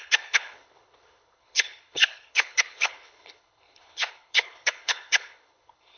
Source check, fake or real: fake